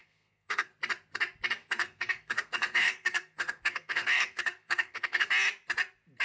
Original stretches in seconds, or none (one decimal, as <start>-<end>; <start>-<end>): 0.7-1.6; 5.3-6.2